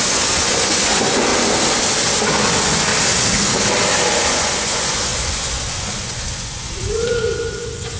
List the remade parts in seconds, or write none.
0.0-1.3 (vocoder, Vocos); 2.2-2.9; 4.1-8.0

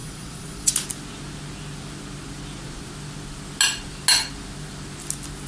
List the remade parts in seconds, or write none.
0.0-0.7 (vocoder, Vocos)